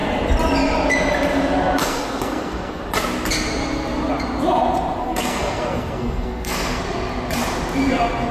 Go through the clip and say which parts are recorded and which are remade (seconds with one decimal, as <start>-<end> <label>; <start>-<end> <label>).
0.0-1.8 recorded; 1.8-2.8 remade; 2.8-5.0 recorded; 5.0-6.8 remade; 6.8-8.3 recorded